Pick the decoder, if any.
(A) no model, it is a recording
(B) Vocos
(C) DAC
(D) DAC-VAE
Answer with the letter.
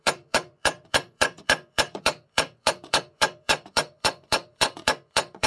B